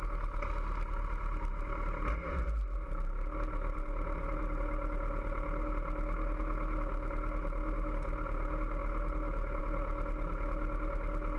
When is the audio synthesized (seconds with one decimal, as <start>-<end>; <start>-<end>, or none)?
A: none